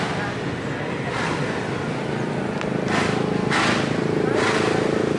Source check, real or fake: real